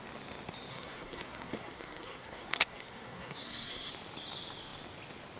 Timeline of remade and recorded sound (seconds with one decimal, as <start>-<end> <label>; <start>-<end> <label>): 0.0-0.7 recorded; 0.7-3.9 remade; 3.9-5.4 recorded